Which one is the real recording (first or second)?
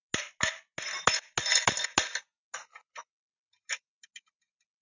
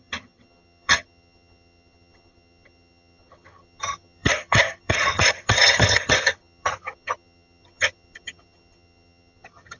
first